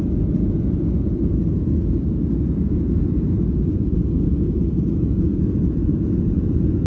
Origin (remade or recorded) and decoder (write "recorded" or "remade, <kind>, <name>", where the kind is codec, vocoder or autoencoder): remade, vocoder, Vocos